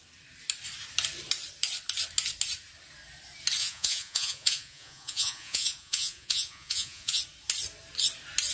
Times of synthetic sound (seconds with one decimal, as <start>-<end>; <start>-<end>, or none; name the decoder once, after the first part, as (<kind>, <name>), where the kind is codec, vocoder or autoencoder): 3.6-7.2 (vocoder, Vocos)